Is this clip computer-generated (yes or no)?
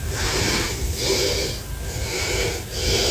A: no